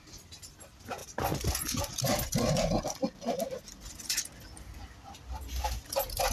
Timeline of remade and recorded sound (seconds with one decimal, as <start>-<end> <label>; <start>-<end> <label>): 0.0-6.3 recorded